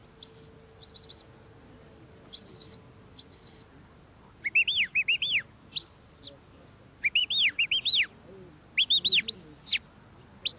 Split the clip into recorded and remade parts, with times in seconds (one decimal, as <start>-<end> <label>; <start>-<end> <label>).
0.0-4.9 recorded; 4.9-5.7 remade; 5.7-10.6 recorded